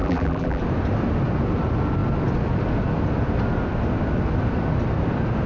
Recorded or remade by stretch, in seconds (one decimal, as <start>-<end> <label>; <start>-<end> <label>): 0.0-0.6 remade; 0.6-5.5 recorded